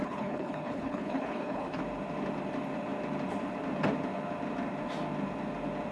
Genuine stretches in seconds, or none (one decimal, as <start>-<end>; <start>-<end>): 1.8-5.9